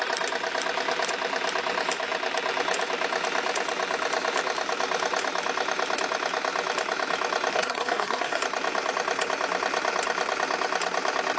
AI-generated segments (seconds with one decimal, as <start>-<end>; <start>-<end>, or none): 7.5-8.4